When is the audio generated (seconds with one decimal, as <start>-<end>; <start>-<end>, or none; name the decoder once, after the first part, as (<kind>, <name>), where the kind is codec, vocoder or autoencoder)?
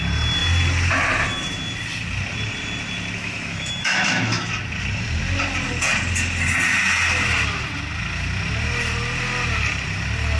3.2-4.4 (autoencoder, DAC-VAE)